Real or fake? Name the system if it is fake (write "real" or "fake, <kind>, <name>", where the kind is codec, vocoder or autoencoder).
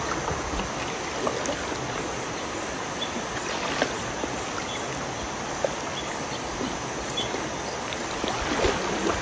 real